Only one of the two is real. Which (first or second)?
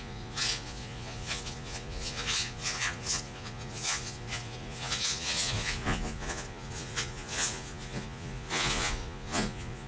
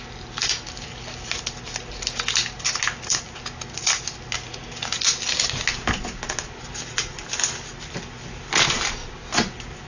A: second